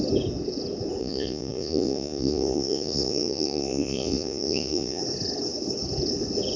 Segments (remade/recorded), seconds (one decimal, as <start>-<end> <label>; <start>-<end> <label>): 0.0-1.0 recorded; 1.0-5.0 remade; 5.0-6.6 recorded